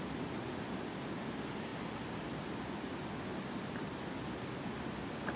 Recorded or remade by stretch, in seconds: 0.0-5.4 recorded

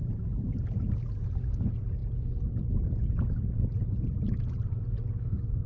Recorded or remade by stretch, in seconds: 0.0-5.7 recorded

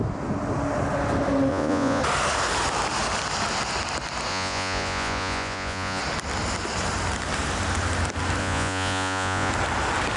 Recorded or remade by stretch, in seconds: 0.0-1.5 recorded; 1.5-2.0 remade; 2.0-4.3 recorded; 4.3-6.0 remade; 6.0-8.4 recorded; 8.4-9.5 remade; 9.5-10.2 recorded

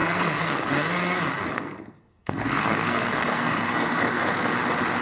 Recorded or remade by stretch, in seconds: 0.0-0.7 remade; 0.7-1.5 recorded; 1.5-4.5 remade; 4.5-5.0 recorded

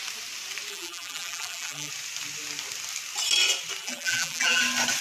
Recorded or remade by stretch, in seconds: 0.0-0.7 recorded; 0.7-1.9 remade; 1.9-3.8 recorded; 3.8-4.6 remade; 4.6-5.0 recorded